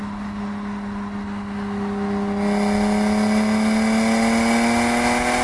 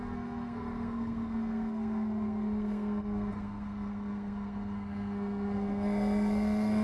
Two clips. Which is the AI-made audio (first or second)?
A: second